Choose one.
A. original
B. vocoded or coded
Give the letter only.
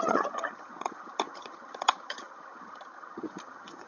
B